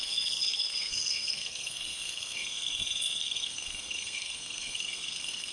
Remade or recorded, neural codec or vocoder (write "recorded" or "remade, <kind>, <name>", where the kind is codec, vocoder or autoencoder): remade, codec, SNAC